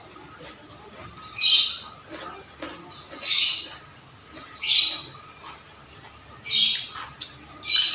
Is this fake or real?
real